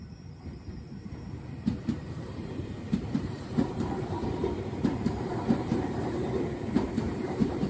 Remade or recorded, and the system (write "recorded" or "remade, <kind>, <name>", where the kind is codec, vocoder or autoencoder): remade, vocoder, BigVGAN v2